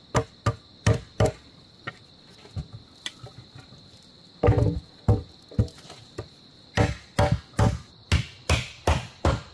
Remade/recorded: recorded